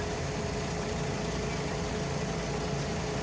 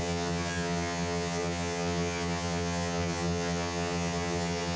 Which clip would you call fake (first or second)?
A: second